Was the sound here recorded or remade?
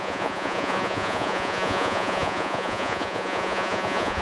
remade